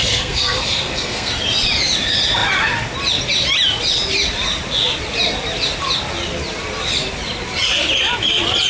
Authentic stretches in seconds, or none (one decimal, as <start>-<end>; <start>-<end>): 1.3-8.7